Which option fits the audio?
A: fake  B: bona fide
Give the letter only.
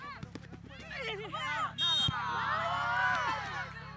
B